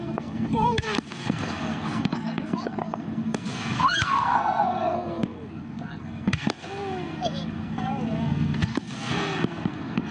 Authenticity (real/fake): fake